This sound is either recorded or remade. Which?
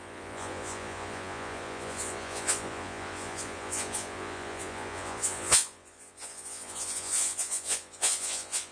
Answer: remade